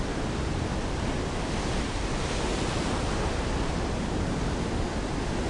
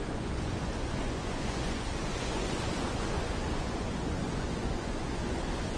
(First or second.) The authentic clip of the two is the first